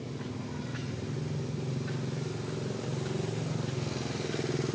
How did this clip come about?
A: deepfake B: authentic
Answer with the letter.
B